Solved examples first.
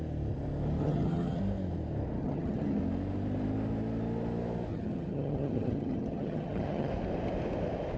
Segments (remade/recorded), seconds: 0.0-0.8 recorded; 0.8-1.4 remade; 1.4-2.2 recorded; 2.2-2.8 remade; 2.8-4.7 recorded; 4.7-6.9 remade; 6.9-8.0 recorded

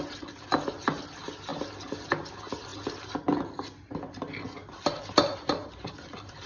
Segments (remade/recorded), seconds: 0.0-6.5 recorded

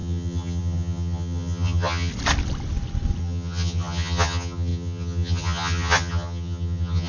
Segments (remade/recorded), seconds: 0.0-2.1 remade; 2.1-3.2 recorded; 3.2-7.1 remade

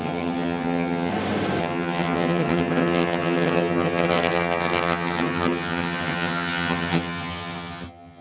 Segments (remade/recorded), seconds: 0.0-1.1 remade; 1.1-1.6 recorded; 1.6-8.2 remade